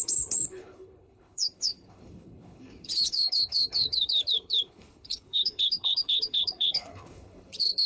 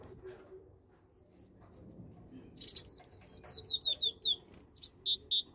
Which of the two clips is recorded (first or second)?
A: second